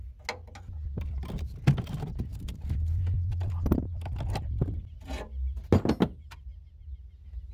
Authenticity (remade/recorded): recorded